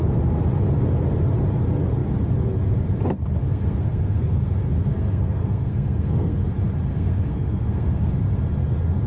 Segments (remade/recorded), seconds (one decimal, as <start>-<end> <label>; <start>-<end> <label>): 0.0-3.4 recorded; 3.4-4.5 remade; 4.5-4.9 recorded; 4.9-6.5 remade; 6.5-6.9 recorded; 6.9-8.1 remade; 8.1-9.1 recorded